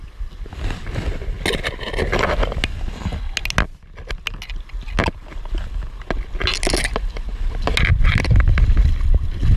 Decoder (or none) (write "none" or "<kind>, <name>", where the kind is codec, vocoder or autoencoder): none